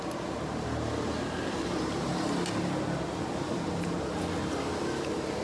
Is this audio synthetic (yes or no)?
no